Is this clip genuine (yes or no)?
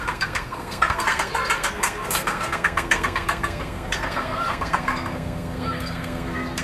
no